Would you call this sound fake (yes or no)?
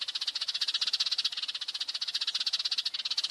no